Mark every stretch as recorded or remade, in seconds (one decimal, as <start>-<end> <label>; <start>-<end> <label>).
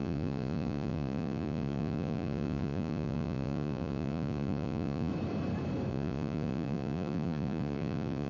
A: 0.0-5.1 remade; 5.1-5.9 recorded; 5.9-8.3 remade